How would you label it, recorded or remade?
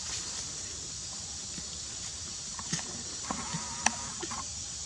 recorded